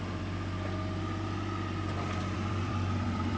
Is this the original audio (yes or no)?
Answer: no